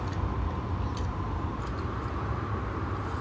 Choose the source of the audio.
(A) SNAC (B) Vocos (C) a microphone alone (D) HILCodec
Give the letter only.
C